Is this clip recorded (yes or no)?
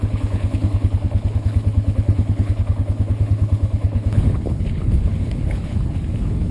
no